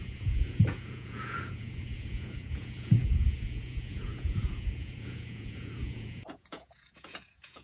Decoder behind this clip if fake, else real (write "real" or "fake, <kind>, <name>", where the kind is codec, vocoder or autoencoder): fake, vocoder, Vocos